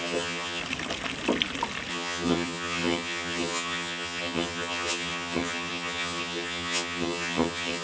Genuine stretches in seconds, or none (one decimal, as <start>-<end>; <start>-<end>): 0.6-1.9